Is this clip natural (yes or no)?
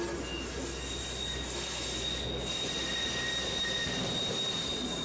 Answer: yes